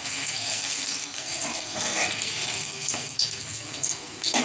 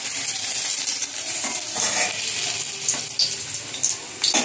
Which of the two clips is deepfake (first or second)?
first